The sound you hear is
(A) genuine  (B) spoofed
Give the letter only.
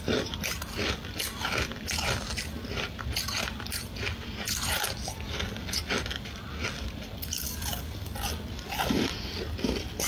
A